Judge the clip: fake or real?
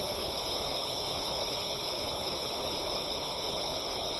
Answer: fake